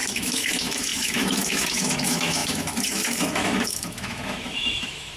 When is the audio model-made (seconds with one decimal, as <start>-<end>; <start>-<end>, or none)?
0.0-5.2